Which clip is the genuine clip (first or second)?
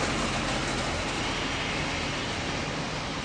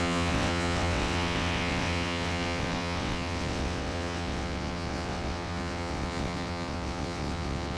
first